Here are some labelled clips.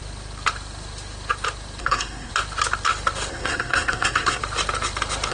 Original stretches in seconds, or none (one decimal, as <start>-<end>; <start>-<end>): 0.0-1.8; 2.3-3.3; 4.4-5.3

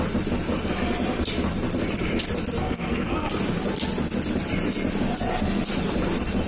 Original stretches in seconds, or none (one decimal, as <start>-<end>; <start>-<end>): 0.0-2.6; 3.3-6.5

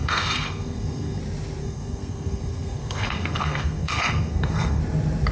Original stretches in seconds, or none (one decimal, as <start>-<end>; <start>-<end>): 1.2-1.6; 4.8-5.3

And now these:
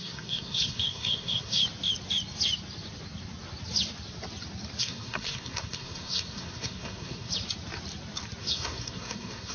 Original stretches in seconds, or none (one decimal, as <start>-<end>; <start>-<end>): 1.6-4.8; 7.3-8.4

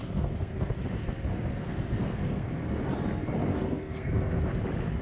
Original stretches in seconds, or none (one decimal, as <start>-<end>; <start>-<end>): 0.8-1.3; 2.5-3.5; 4.4-5.0

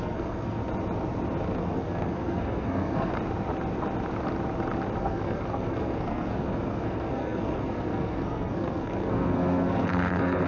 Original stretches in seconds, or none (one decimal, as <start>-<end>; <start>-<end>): 0.6-1.6; 3.1-5.0

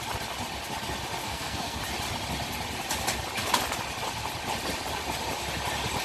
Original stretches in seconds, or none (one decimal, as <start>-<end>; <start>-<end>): 0.0-1.2; 1.8-6.0